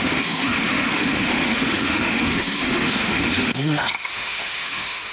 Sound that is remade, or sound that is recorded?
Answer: remade